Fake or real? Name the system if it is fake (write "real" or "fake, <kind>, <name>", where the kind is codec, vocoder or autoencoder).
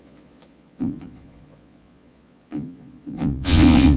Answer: fake, vocoder, Vocos